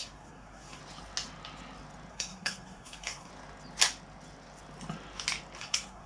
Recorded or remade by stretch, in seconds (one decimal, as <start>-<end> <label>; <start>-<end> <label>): 0.0-0.8 remade; 0.8-2.1 recorded; 2.1-3.3 remade; 3.3-5.6 recorded; 5.6-6.1 remade